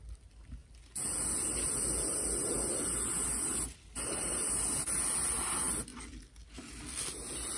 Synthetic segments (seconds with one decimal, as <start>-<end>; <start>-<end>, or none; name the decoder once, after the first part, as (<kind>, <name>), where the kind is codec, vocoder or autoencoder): none